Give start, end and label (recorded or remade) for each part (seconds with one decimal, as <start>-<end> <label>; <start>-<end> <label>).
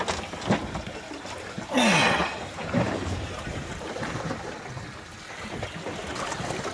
0.0-2.2 recorded; 2.2-4.5 remade; 4.5-6.7 recorded